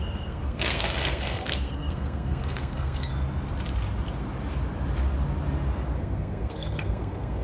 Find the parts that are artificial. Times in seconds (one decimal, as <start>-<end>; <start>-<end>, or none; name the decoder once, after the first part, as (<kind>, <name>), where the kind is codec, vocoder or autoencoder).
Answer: 0.0-3.1 (codec, SNAC); 6.0-7.4